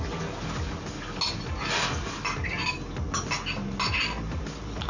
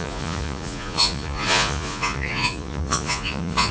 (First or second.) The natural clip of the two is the first